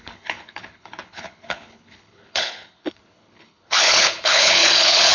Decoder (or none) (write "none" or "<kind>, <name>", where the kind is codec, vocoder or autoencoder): codec, HILCodec